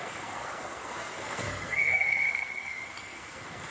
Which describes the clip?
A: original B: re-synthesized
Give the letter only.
B